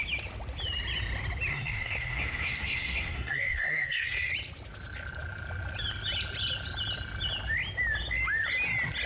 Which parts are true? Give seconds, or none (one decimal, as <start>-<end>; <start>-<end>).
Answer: 0.0-1.5; 4.3-9.1

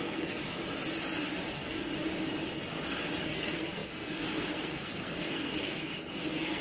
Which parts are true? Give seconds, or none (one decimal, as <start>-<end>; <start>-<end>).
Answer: 0.4-1.5; 1.9-3.2